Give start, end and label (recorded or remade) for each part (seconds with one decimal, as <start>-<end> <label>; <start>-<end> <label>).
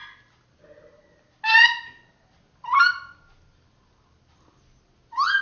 0.0-5.4 recorded